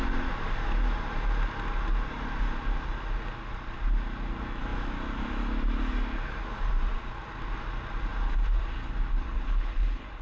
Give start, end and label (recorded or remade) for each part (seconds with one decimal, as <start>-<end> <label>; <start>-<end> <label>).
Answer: 0.0-9.2 recorded; 9.2-10.2 remade